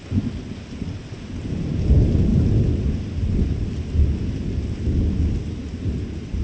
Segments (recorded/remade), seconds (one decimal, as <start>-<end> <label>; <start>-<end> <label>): 0.0-6.4 recorded